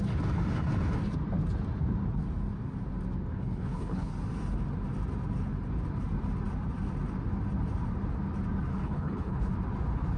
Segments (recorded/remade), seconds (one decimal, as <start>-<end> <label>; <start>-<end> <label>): 0.0-3.3 recorded; 3.3-4.1 remade; 4.1-8.7 recorded; 8.7-9.5 remade; 9.5-10.2 recorded